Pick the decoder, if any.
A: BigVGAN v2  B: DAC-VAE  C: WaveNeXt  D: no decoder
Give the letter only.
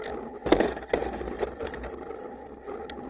D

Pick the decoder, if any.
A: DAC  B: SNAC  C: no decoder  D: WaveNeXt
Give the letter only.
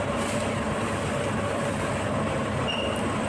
C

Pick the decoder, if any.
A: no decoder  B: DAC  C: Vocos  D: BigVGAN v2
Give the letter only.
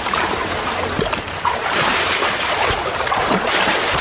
D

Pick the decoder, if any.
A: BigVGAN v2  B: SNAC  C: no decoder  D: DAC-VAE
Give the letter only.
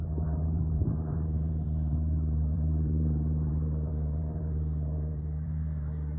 A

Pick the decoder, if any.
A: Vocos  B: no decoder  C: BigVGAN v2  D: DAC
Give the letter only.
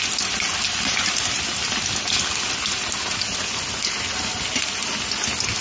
B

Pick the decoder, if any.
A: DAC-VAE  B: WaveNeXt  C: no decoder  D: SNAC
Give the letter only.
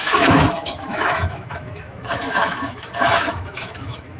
A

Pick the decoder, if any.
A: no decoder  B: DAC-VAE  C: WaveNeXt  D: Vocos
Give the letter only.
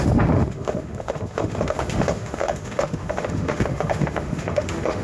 B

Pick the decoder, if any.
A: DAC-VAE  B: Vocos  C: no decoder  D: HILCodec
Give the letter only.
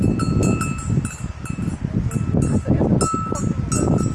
C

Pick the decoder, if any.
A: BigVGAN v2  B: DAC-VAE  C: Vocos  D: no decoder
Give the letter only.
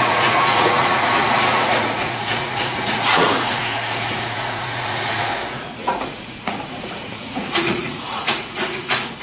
C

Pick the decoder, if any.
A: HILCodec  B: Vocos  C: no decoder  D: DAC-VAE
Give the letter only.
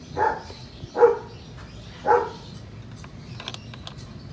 C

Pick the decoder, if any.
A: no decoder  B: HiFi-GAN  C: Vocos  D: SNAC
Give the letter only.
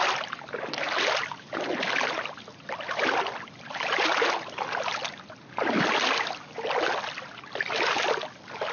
A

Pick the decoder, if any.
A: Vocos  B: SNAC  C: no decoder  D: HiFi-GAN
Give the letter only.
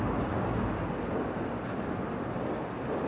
C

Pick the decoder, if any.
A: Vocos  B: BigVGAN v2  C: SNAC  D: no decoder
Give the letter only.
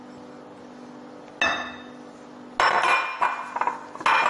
D